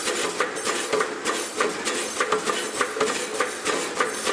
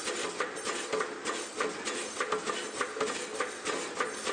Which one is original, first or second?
second